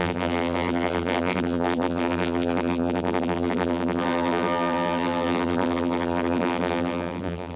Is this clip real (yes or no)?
no